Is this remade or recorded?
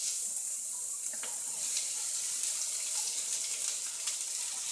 recorded